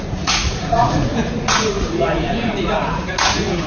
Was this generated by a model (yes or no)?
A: yes